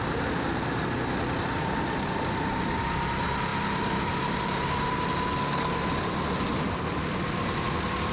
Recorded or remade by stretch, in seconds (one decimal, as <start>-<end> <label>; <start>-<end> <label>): 0.0-8.1 recorded